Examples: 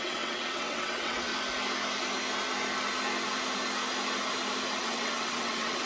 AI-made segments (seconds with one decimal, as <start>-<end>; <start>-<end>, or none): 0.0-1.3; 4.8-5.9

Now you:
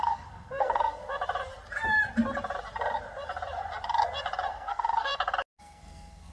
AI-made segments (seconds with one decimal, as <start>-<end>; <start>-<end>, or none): 0.0-1.0; 4.5-5.1; 5.6-6.3

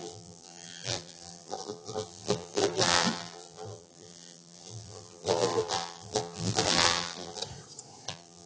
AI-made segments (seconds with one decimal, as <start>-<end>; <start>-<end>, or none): 0.0-7.4; 8.1-8.5